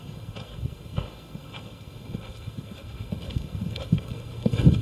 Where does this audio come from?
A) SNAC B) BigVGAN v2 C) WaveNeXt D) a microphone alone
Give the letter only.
A